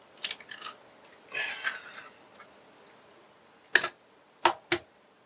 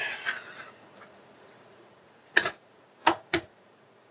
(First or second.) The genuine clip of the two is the first